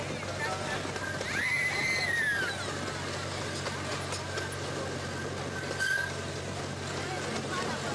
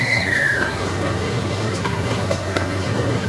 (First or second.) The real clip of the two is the first